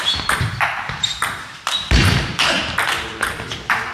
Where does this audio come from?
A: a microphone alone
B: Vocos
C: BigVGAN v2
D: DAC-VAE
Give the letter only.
C